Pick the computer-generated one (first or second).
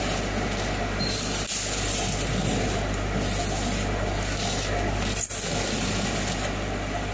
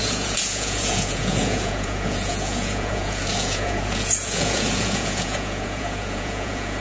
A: second